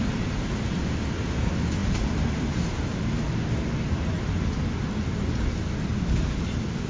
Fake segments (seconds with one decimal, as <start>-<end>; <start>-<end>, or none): none